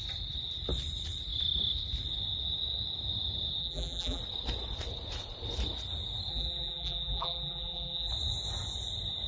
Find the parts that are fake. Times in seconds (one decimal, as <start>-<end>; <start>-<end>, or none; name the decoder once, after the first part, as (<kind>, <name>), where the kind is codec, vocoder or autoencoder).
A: 3.6-4.2 (vocoder, BigVGAN v2); 6.3-8.1